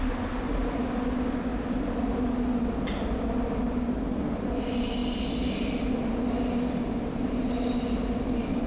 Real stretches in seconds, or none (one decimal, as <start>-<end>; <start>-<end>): 0.0-8.7